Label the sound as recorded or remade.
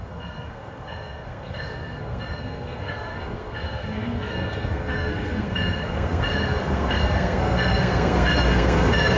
remade